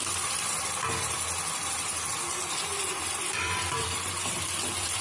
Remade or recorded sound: remade